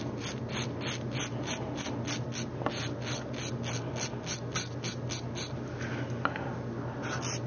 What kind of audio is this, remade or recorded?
recorded